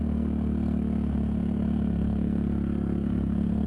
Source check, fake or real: fake